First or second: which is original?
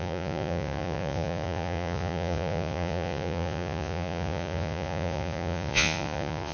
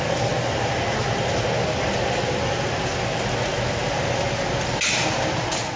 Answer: second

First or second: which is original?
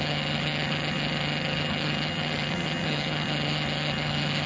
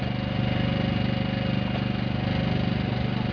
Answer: second